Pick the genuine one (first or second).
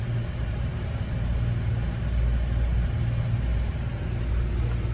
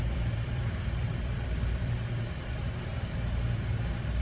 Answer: first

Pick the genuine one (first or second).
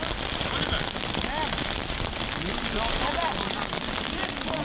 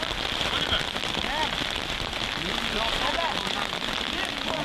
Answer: second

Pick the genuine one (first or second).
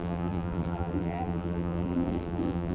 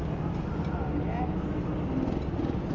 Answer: second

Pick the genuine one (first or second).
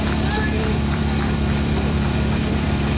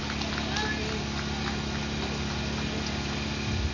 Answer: second